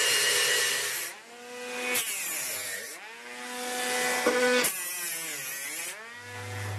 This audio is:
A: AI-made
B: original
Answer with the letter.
B